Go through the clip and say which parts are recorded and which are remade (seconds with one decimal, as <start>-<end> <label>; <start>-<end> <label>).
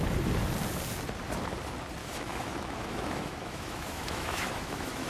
0.0-2.0 recorded; 2.0-5.1 remade